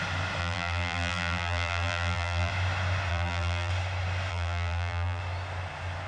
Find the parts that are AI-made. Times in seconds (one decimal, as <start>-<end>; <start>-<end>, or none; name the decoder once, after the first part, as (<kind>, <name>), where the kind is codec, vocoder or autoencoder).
0.4-2.5 (vocoder, BigVGAN v2); 3.1-3.7; 4.3-5.2